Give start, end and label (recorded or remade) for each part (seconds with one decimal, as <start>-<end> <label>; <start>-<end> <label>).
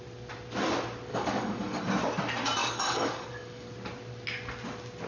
0.0-1.1 recorded; 1.1-1.8 remade; 1.8-2.6 recorded; 2.6-3.7 remade; 3.7-5.1 recorded